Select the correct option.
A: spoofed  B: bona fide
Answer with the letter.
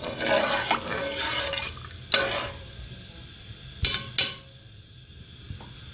B